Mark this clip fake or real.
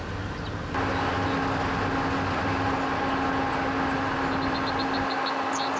real